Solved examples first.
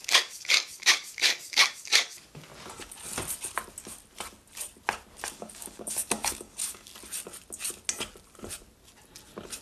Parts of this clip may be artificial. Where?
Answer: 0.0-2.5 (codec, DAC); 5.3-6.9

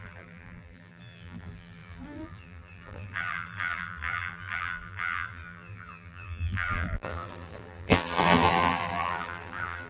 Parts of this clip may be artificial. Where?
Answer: 0.0-9.9 (vocoder, BigVGAN v2)

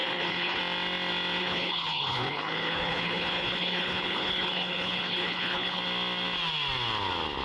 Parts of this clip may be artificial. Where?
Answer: 0.0-0.6 (codec, HILCodec); 1.4-5.8

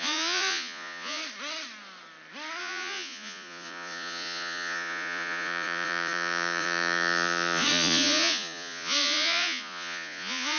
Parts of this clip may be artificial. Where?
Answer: 0.0-1.2 (vocoder, Vocos); 2.6-10.6

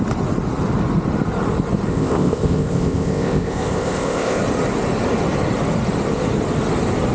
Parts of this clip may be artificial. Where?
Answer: 1.9-4.4 (codec, ZipCodec)

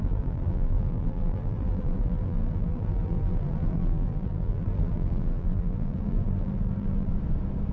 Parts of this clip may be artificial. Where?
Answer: 0.0-7.1 (vocoder, BigVGAN v2)

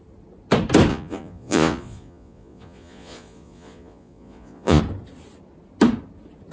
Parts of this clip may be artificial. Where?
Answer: 0.9-4.8 (vocoder, Vocos)

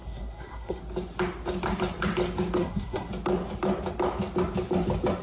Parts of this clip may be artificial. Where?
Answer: 0.0-0.8 (codec, SNAC); 2.6-3.1